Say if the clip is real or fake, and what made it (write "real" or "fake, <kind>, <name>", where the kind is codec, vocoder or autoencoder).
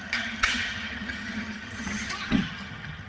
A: fake, vocoder, HiFi-GAN